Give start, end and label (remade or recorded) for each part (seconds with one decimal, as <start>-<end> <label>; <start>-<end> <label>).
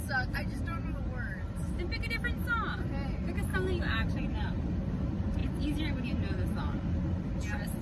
0.0-7.8 recorded